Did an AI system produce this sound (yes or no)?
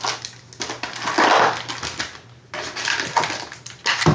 no